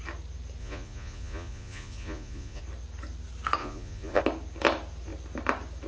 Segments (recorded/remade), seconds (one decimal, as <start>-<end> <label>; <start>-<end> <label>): 0.0-0.6 recorded; 0.6-2.6 remade; 2.6-3.6 recorded; 3.6-4.2 remade; 4.2-5.9 recorded